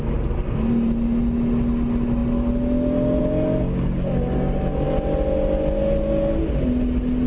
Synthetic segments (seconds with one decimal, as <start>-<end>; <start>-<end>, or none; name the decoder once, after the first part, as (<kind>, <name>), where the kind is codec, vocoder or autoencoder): 3.6-4.7 (codec, DAC)